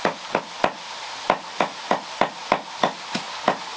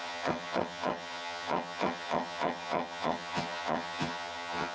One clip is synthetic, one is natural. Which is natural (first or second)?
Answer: first